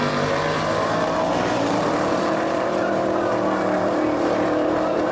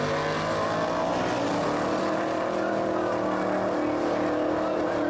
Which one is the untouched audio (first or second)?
second